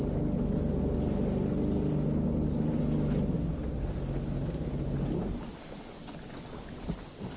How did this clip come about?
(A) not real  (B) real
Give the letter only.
B